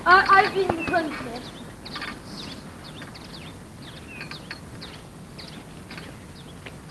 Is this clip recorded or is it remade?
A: recorded